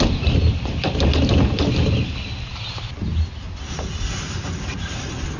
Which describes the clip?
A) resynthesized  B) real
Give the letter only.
B